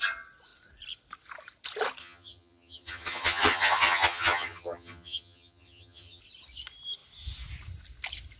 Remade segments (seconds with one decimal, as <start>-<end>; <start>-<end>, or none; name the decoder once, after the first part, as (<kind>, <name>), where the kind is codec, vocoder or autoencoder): 2.0-6.2 (vocoder, HiFi-GAN)